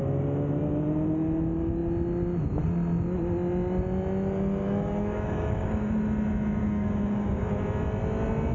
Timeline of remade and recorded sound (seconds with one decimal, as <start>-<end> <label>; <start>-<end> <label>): 0.0-4.6 recorded; 4.6-5.9 remade; 5.9-6.6 recorded; 6.6-7.4 remade; 7.4-8.5 recorded